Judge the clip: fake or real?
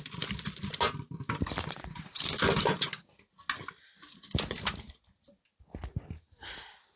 real